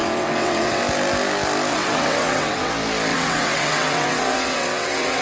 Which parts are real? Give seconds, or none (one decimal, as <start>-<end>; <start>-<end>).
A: 0.8-1.7; 2.7-3.1